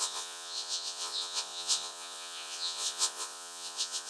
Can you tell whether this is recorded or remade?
remade